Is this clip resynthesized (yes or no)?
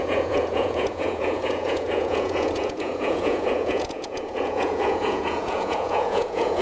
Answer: yes